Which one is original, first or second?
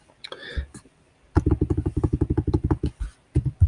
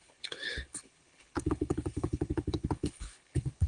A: first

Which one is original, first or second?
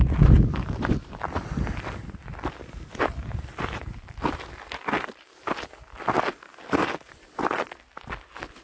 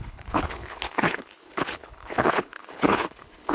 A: first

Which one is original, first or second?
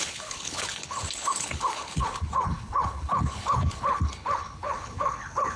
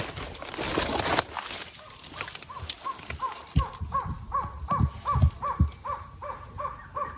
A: second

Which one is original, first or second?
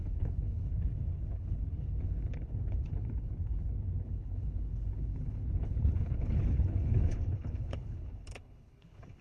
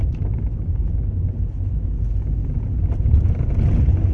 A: second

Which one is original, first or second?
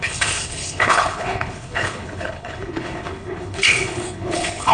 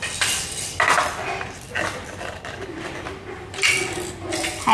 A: second